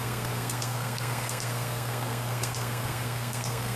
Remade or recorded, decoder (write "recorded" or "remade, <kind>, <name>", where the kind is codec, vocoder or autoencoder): remade, codec, SNAC